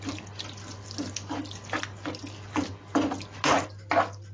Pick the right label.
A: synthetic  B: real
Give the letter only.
B